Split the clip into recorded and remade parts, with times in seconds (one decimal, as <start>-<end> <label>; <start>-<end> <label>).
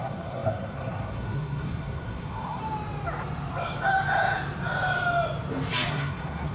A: 0.0-2.6 remade; 2.6-5.9 recorded; 5.9-6.5 remade